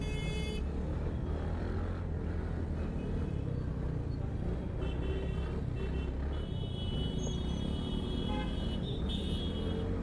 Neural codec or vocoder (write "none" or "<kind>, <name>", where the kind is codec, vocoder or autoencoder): none